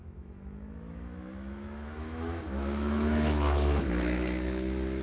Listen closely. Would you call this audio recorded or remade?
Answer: remade